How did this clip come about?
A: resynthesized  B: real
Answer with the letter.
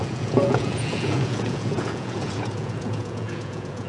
A